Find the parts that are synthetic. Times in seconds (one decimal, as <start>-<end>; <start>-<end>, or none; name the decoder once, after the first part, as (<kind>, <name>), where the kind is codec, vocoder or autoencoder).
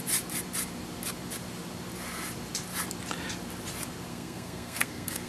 4.1-5.3 (codec, SNAC)